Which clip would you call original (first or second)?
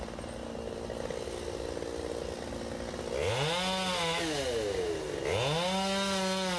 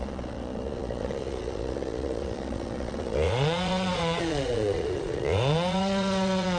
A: first